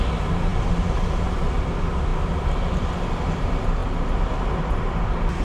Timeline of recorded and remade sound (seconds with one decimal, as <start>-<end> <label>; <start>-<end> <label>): 0.0-5.4 recorded